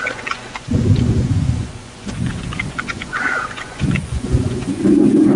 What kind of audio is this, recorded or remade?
remade